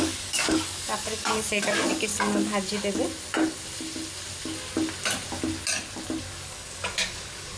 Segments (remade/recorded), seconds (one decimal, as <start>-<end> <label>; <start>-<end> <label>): 0.0-2.1 remade; 2.1-6.2 recorded; 6.2-7.6 remade